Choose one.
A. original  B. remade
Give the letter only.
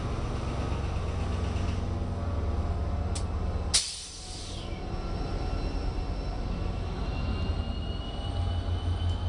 A